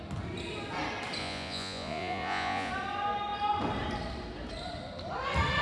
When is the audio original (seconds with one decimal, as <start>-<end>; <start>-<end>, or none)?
0.0-1.2; 2.7-5.6